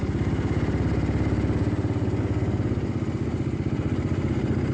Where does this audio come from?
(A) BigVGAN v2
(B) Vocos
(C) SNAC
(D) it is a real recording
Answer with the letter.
D